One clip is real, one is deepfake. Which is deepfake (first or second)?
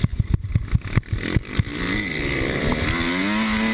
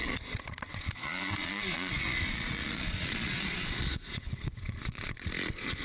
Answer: second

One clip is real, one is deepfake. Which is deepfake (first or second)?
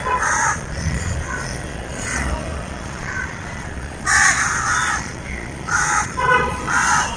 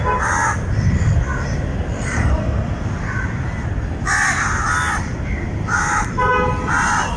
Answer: first